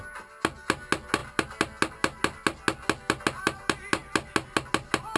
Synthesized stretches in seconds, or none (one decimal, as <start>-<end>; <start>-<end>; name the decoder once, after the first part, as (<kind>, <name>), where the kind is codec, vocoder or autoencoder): none